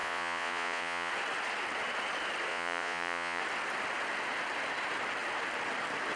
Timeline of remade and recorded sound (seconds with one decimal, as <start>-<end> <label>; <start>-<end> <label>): 0.0-1.1 remade; 1.1-2.5 recorded; 2.5-3.4 remade; 3.4-6.2 recorded